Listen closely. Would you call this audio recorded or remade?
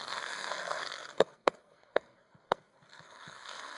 remade